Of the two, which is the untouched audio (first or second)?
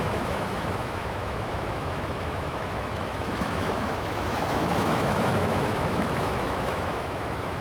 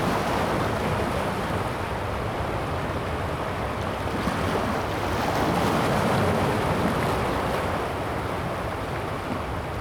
second